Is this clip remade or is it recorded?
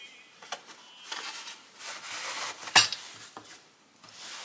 recorded